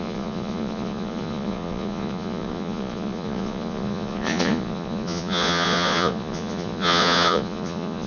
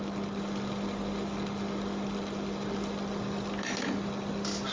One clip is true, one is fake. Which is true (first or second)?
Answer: second